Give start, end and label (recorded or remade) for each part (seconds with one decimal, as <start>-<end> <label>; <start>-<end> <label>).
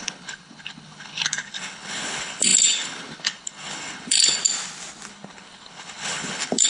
0.0-4.4 remade; 4.4-5.1 recorded; 5.1-6.7 remade